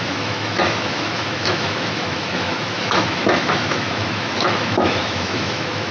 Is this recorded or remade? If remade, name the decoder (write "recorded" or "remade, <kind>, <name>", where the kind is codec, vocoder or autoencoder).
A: remade, autoencoder, DAC-VAE